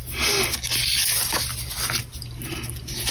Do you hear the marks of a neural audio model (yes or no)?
no